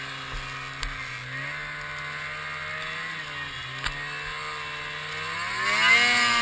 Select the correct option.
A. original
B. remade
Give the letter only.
A